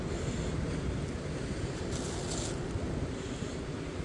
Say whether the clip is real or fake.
real